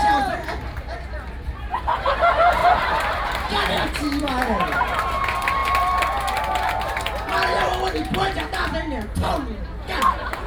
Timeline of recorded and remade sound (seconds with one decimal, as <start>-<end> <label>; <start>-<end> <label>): 0.0-2.6 recorded; 2.6-3.2 remade; 3.2-10.5 recorded